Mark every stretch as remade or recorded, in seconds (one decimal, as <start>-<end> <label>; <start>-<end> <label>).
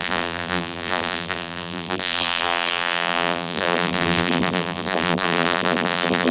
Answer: 0.0-6.3 remade